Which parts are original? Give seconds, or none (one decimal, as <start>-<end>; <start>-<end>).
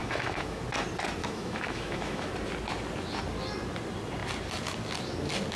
0.6-1.2; 2.3-5.6